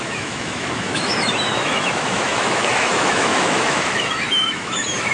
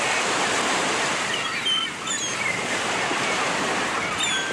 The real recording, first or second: second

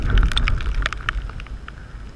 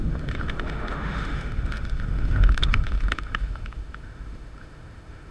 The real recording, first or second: first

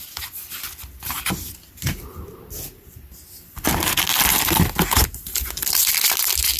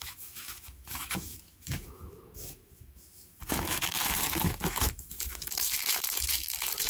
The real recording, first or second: first